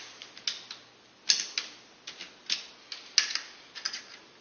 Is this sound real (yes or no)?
yes